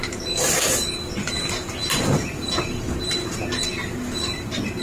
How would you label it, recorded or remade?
recorded